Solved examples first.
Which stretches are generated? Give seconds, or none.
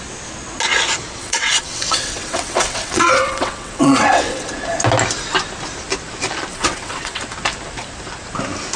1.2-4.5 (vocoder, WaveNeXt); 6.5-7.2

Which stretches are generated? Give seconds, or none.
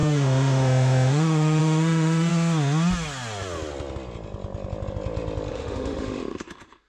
0.0-2.3 (autoencoder, DAC-VAE); 5.5-6.9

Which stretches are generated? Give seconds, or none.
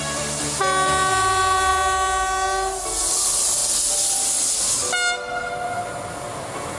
none